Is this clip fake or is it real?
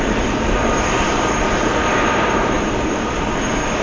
fake